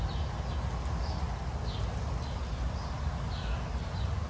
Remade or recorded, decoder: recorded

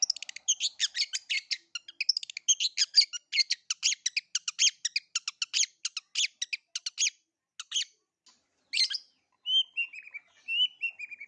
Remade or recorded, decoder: recorded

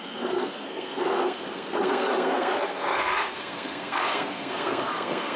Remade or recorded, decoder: remade, codec, SNAC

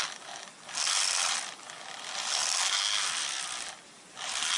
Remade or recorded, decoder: recorded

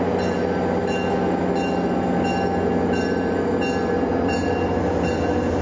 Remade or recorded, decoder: recorded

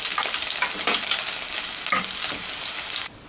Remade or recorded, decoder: recorded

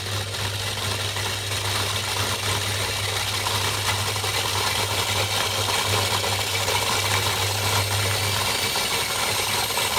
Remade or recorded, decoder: recorded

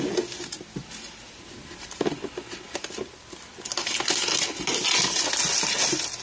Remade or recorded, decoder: recorded